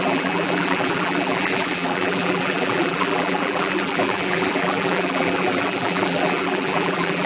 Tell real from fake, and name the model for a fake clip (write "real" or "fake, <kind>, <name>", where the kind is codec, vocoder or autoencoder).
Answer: fake, vocoder, BigVGAN v2